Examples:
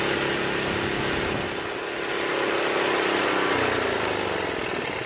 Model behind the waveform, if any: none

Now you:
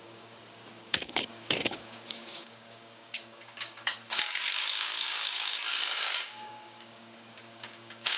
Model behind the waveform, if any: codec, DAC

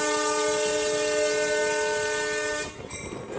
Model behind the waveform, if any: none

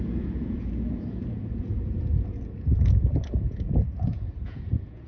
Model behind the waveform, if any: vocoder, Vocos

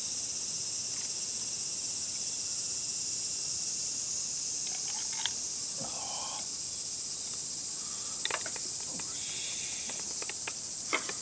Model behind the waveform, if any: none